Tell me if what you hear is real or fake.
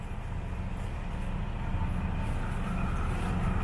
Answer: real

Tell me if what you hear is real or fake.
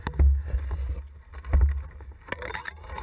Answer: real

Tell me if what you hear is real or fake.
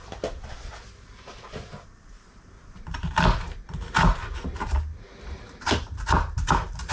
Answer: fake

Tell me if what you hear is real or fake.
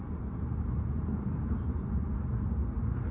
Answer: real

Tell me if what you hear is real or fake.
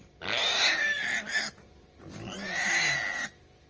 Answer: real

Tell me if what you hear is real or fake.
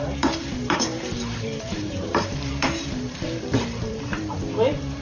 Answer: fake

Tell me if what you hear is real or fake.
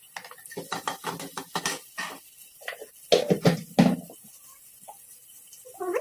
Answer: real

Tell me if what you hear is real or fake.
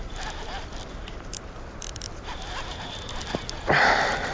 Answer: real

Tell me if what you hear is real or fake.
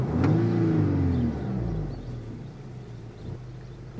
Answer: real